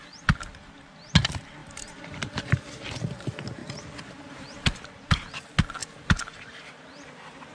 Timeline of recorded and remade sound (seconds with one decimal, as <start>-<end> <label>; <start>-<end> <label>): 0.0-1.6 recorded; 1.6-3.2 remade; 3.2-5.8 recorded; 5.8-6.5 remade; 6.5-7.5 recorded